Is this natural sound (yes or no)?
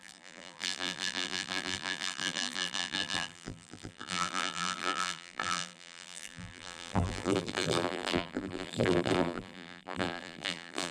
no